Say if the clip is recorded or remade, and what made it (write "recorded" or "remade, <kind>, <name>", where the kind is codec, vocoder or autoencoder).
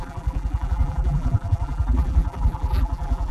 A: remade, vocoder, BigVGAN v2